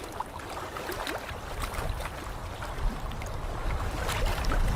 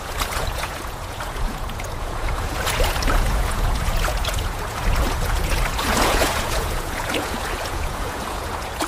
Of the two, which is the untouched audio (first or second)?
first